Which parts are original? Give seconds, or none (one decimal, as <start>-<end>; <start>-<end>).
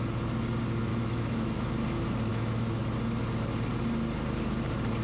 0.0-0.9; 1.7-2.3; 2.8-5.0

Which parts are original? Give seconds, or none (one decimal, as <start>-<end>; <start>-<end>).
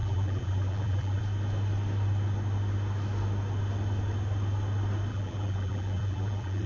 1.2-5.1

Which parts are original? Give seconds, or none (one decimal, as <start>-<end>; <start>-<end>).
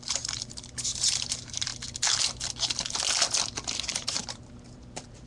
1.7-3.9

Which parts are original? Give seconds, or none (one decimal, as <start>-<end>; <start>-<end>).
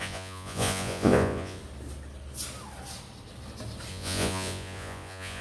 1.6-3.9